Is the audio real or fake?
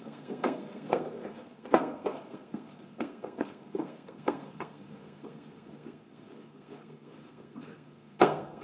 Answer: fake